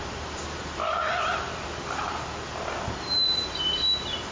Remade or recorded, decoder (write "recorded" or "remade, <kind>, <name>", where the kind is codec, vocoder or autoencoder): recorded